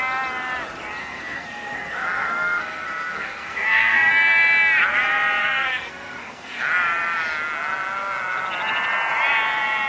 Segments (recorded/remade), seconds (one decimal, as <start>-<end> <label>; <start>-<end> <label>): 0.0-1.0 recorded; 1.0-4.1 remade; 4.1-5.4 recorded; 5.4-6.6 remade; 6.6-9.9 recorded